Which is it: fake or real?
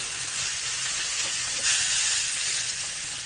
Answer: fake